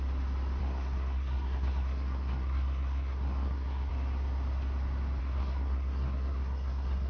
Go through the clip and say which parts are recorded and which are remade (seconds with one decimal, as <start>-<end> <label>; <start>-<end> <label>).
0.0-0.6 recorded; 0.6-3.9 remade; 3.9-5.2 recorded; 5.2-7.1 remade